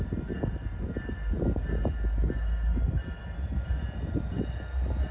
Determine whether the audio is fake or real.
real